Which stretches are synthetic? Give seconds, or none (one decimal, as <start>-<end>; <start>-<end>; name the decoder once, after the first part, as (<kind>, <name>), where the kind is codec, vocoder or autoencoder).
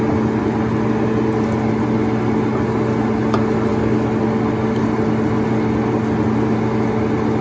none